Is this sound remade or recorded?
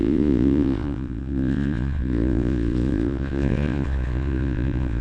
remade